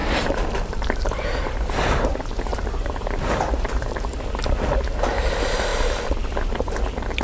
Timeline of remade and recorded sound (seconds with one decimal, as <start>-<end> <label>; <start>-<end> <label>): 0.0-4.3 remade; 4.3-7.2 recorded